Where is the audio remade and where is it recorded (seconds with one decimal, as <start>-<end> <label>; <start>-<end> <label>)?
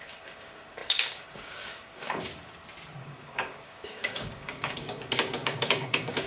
0.0-2.3 remade; 2.3-3.0 recorded; 3.0-6.3 remade